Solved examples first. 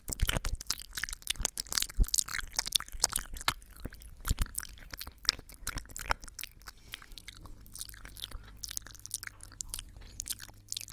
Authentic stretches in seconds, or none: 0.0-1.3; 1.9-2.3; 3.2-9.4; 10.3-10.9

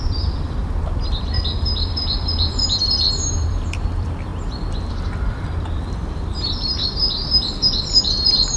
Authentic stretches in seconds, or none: 4.3-4.9

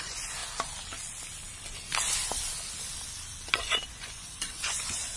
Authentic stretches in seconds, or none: 0.4-3.5

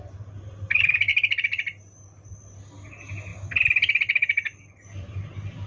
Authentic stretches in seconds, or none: 0.0-5.7

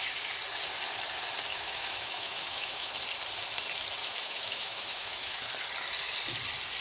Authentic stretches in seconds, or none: 0.0-1.5; 2.9-4.0; 5.4-6.8

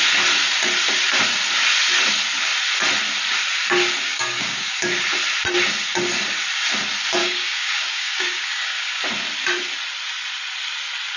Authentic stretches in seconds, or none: 0.0-4.1; 4.8-7.2; 9.0-11.2

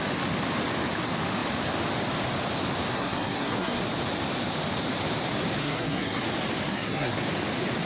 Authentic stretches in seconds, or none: 0.0-2.9; 3.8-5.6; 6.2-6.7; 7.2-7.9

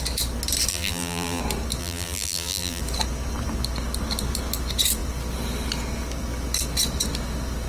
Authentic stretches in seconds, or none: 0.0-0.7; 1.4-1.8; 2.8-7.7